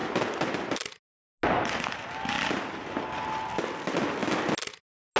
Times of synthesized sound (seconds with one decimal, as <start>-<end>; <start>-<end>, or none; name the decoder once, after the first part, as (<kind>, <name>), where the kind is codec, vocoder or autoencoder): none